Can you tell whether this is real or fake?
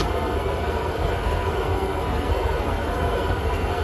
fake